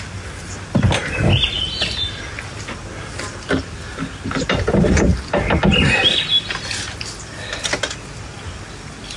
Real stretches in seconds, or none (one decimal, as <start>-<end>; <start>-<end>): 0.0-9.2

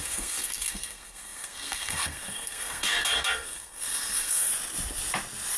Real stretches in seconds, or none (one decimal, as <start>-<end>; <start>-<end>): 4.5-5.6